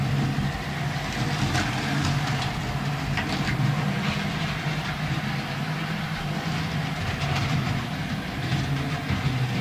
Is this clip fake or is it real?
real